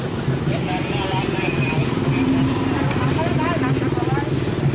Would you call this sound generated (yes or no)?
no